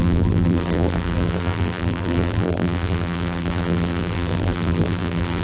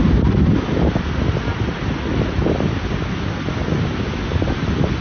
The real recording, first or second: second